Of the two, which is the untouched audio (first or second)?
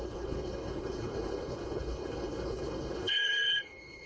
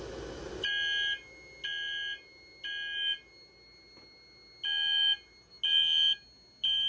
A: second